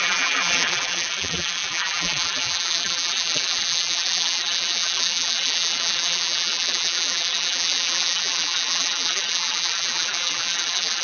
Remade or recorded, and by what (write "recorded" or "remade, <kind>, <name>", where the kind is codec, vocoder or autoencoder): remade, vocoder, BigVGAN v2